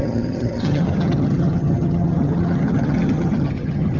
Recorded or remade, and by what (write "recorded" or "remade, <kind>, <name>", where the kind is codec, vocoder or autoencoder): remade, vocoder, HiFi-GAN